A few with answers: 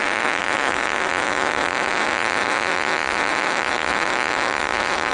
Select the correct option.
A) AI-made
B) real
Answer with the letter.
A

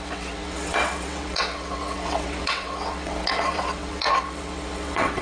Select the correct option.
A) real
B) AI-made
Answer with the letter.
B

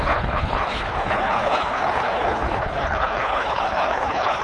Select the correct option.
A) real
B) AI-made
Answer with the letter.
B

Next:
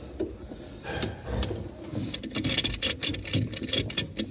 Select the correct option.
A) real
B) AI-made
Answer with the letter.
A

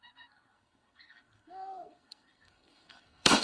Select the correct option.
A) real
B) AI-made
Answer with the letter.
B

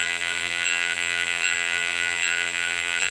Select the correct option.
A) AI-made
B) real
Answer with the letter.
A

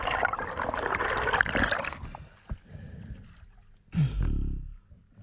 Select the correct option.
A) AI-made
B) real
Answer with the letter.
B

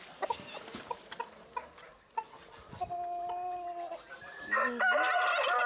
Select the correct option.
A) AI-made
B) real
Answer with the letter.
B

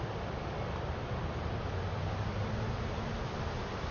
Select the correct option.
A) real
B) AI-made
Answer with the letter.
A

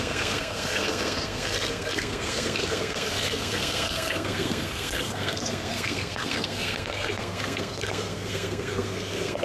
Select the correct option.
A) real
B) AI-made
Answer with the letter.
B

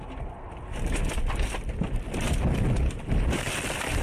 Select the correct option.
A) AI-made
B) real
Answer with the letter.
A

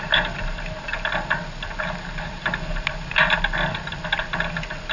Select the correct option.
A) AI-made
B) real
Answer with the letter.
B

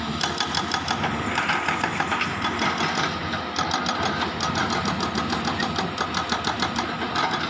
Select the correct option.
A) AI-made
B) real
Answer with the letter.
B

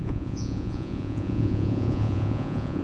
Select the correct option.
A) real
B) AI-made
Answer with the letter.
B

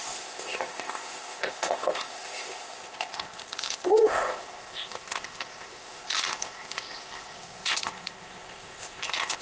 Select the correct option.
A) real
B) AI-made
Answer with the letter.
B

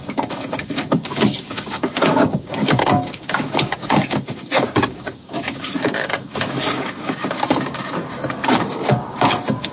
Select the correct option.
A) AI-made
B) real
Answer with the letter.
A